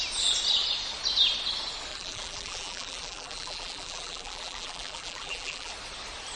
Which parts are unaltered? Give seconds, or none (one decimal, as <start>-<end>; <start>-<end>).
0.0-1.9; 5.7-6.4